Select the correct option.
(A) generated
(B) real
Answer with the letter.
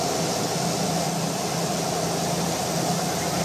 B